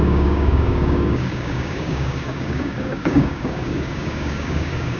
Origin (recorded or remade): remade